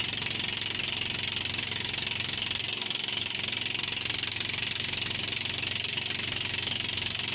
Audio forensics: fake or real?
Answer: real